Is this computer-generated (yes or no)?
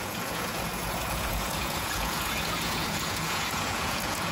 yes